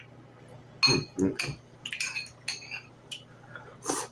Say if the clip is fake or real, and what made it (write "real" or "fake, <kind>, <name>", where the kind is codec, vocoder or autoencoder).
real